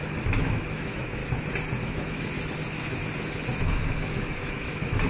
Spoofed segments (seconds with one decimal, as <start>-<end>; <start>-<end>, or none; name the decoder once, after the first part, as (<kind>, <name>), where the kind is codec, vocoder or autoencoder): 0.0-1.2 (autoencoder, DAC-VAE); 1.8-2.3; 3.6-5.1